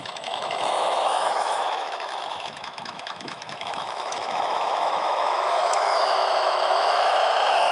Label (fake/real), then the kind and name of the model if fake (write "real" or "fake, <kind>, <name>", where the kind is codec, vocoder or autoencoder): fake, autoencoder, DAC-VAE